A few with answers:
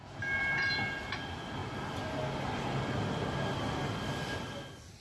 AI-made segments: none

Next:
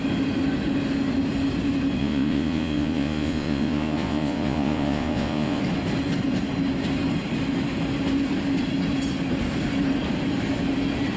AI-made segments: 2.0-5.6 (vocoder, Vocos)